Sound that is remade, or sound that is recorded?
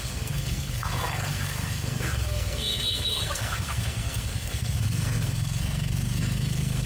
remade